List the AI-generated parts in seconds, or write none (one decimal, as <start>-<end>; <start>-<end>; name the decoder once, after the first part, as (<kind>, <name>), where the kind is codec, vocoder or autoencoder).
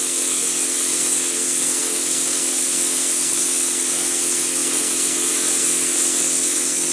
0.0-6.9 (codec, SNAC)